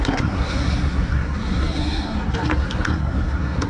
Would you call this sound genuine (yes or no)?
no